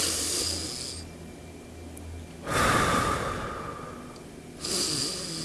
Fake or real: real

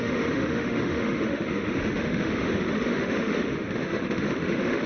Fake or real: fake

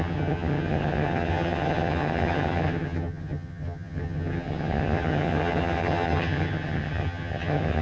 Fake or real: fake